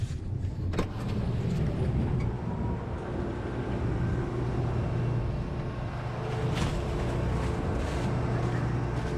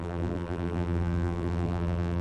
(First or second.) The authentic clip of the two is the first